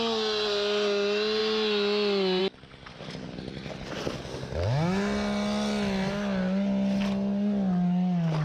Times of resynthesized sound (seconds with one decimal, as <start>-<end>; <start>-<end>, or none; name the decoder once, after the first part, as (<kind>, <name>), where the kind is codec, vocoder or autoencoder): none